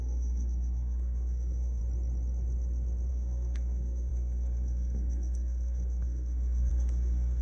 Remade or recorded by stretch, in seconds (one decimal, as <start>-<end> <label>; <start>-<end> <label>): 0.0-1.8 remade; 1.8-3.1 recorded; 3.1-7.4 remade